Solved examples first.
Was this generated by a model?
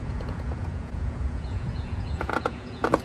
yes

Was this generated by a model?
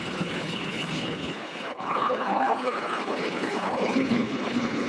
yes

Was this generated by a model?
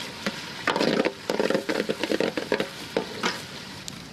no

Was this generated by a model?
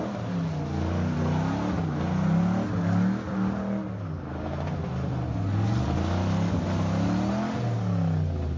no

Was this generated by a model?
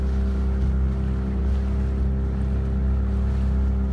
no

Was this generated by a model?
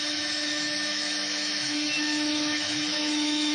yes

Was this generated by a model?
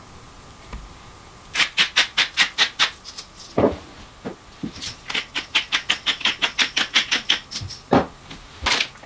no